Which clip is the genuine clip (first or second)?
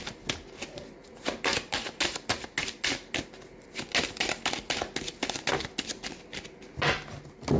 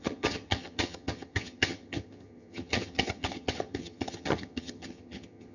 first